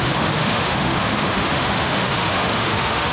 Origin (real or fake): fake